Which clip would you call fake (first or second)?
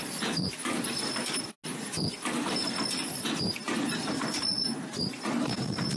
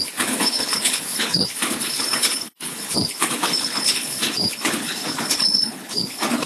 second